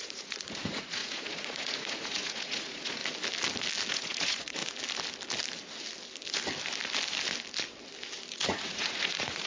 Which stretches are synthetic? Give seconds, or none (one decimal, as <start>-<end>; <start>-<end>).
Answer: 0.0-3.0; 3.9-4.6; 8.3-9.5